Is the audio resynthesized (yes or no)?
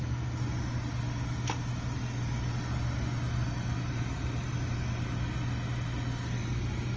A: no